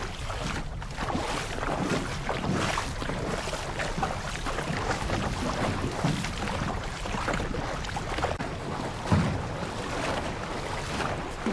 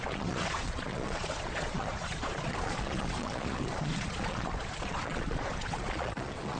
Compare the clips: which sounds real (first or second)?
first